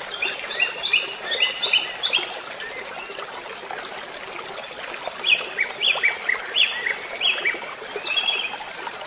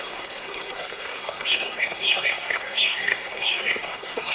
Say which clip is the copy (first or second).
second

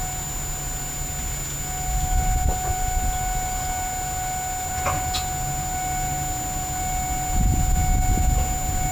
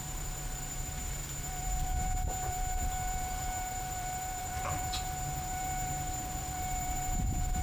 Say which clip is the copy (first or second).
second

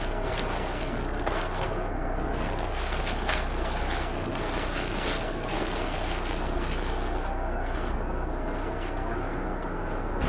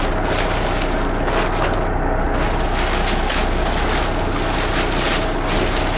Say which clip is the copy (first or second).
first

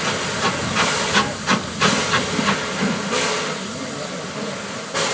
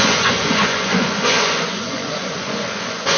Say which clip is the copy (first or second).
second